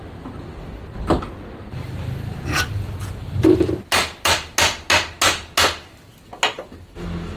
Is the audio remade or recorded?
recorded